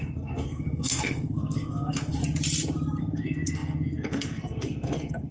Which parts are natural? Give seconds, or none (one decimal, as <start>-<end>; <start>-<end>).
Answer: 2.2-3.0